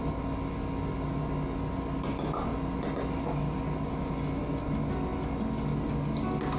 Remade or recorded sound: recorded